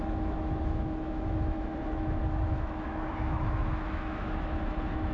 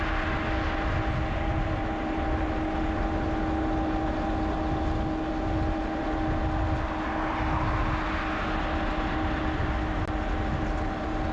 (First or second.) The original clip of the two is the second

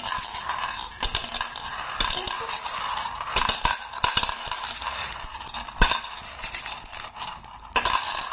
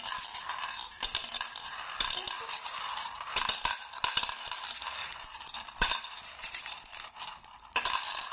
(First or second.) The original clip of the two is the first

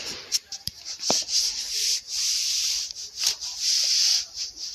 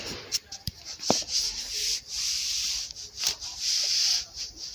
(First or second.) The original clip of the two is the second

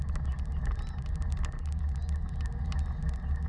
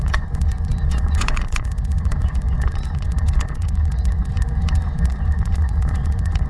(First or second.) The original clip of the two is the first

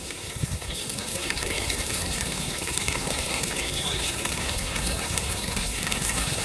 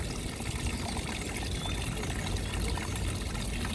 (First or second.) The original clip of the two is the second